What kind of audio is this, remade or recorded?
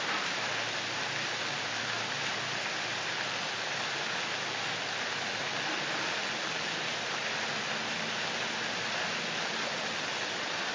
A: recorded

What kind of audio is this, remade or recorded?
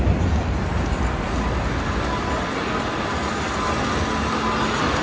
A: recorded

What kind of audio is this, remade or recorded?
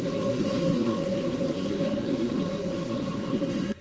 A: remade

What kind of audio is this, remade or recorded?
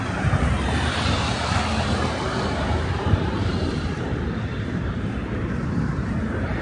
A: remade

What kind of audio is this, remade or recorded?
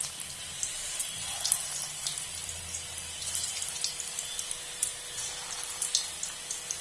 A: recorded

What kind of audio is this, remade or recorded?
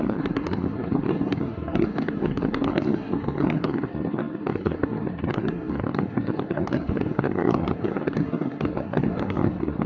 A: remade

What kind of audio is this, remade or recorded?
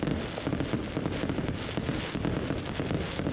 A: recorded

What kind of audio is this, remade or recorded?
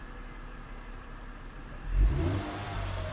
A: remade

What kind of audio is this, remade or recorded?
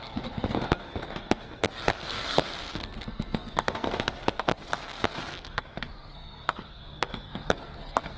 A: remade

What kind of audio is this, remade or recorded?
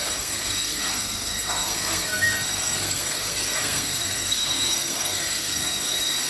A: remade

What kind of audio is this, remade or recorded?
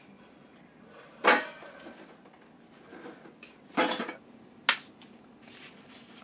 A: recorded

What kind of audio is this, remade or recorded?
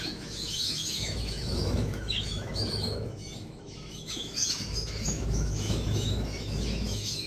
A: remade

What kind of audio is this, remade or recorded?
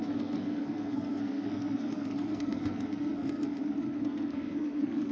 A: remade